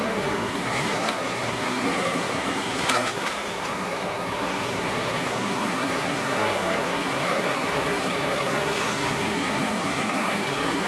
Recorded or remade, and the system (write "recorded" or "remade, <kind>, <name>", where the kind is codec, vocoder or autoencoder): remade, codec, SNAC